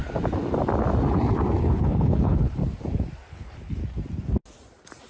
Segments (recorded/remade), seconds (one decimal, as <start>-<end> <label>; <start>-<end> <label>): 0.0-1.6 recorded; 1.6-2.6 remade; 2.6-3.3 recorded; 3.3-3.8 remade; 3.8-5.1 recorded